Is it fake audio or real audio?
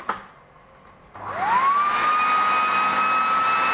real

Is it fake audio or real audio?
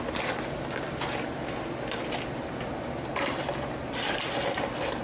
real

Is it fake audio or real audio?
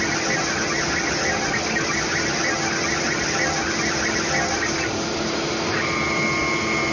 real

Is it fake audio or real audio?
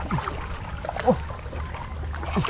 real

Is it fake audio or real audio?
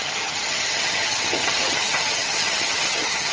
fake